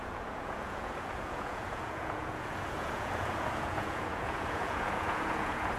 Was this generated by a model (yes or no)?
yes